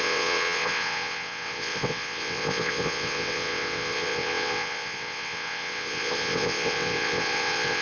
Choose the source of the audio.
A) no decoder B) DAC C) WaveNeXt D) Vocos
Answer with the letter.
C